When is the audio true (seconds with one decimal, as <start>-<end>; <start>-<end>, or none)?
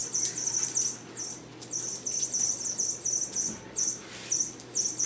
0.0-5.1